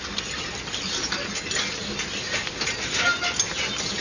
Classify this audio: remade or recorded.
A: recorded